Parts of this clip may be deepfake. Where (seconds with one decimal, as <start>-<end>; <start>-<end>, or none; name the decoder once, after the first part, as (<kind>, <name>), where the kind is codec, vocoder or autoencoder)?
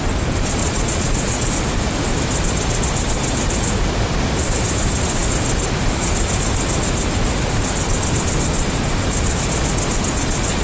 0.6-1.5 (vocoder, Vocos)